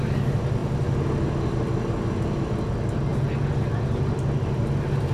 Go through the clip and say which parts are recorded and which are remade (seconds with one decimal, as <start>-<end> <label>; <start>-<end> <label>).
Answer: 0.0-5.1 recorded